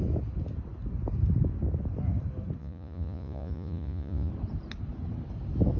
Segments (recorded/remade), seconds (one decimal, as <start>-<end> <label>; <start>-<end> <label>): 0.0-2.6 recorded; 2.6-4.3 remade; 4.3-5.8 recorded